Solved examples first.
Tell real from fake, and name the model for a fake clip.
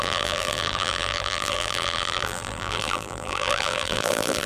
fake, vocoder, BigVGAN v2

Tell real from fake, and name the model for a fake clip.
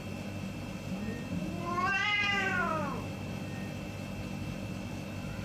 real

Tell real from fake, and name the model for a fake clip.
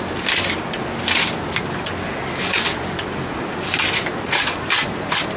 real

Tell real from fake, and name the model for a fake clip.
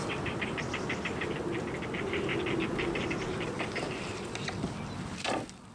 real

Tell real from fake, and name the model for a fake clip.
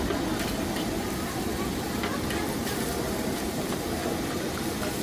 fake, vocoder, BigVGAN v2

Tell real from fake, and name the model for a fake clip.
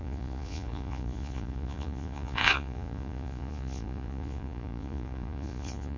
fake, vocoder, Vocos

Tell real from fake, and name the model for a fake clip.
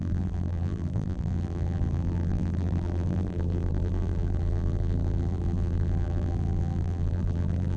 fake, vocoder, BigVGAN v2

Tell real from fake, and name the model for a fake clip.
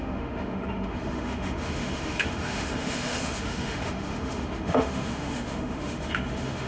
fake, autoencoder, DAC-VAE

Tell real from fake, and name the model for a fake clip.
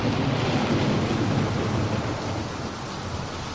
real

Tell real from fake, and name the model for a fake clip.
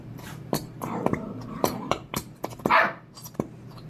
fake, vocoder, BigVGAN v2